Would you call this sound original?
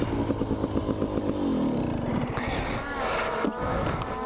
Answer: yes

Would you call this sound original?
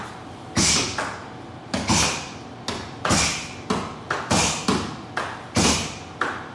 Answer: yes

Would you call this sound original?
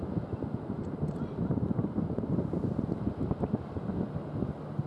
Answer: yes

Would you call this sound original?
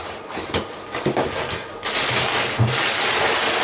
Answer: yes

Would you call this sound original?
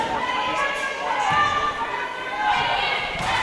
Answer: yes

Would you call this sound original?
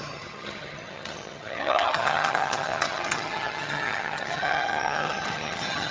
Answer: no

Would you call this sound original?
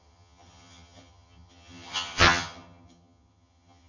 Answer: no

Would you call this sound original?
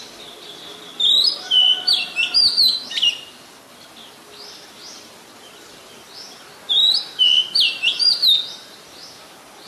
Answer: yes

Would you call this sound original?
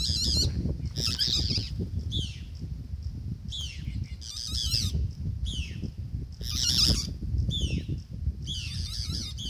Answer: yes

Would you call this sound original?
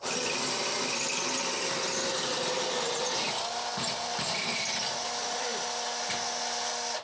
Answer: yes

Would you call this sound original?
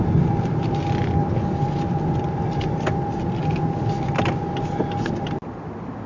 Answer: yes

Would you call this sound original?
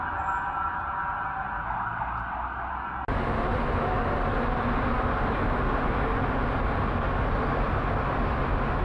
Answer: yes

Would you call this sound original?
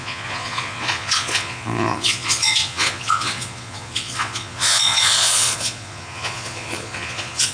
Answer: no